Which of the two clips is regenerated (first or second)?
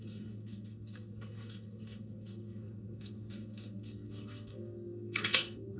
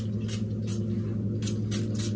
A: first